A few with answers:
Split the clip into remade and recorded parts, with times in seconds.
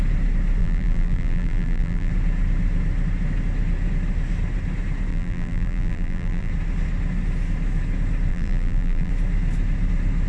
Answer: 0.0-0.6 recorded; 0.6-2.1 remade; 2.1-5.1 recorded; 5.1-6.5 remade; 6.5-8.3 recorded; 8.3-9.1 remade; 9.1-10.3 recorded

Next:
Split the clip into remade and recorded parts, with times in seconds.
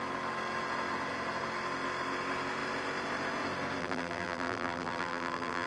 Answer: 0.0-3.8 recorded; 3.8-5.7 remade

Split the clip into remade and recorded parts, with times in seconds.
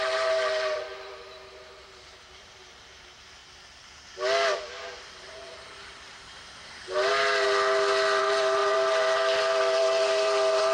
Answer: 0.0-3.4 remade; 3.4-4.8 recorded; 4.8-7.1 remade; 7.1-8.2 recorded; 8.2-10.7 remade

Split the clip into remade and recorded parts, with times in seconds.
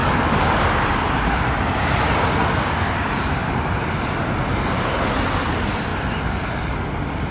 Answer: 0.0-3.4 recorded; 3.4-4.2 remade; 4.2-7.3 recorded